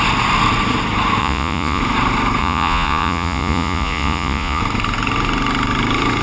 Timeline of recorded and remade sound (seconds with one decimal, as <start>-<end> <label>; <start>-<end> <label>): 0.0-1.2 recorded; 1.2-1.8 remade; 1.8-2.4 recorded; 2.4-4.6 remade; 4.6-6.2 recorded